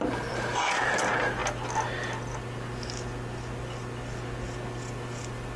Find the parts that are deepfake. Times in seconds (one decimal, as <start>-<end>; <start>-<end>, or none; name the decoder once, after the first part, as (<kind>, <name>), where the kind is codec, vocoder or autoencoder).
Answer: 0.0-1.4 (vocoder, BigVGAN v2); 4.8-5.6

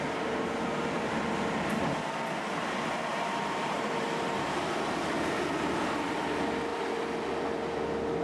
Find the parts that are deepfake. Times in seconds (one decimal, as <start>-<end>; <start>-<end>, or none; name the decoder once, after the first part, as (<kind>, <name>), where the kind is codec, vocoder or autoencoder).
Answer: 3.1-5.0 (vocoder, BigVGAN v2)

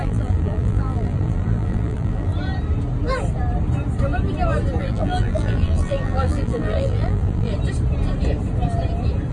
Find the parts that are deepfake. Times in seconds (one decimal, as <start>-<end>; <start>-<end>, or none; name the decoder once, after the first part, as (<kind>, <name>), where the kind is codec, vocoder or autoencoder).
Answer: 0.0-2.3 (vocoder, BigVGAN v2); 4.8-7.5

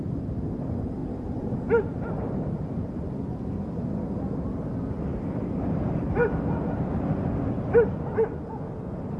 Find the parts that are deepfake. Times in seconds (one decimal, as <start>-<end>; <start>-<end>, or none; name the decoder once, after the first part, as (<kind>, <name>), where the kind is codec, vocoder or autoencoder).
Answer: 1.0-3.4 (vocoder, BigVGAN v2)

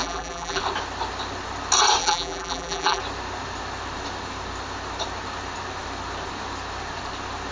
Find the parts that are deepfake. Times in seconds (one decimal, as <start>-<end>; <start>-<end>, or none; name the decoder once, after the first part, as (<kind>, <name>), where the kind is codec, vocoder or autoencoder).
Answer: 0.0-0.6 (vocoder, BigVGAN v2); 2.0-3.0